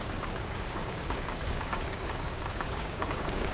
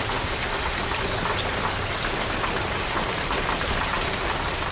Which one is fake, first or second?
first